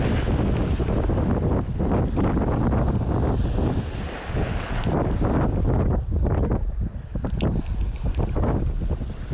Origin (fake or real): real